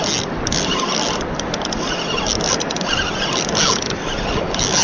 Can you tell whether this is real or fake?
real